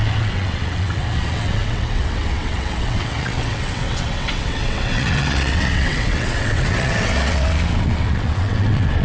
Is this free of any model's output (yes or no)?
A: no